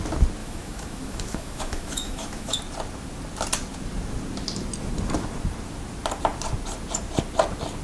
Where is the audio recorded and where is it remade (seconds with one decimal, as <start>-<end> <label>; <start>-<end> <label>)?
0.0-0.4 recorded; 0.4-2.6 remade; 2.6-7.8 recorded